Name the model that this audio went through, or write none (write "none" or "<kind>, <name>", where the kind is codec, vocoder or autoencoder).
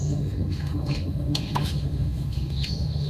autoencoder, DAC-VAE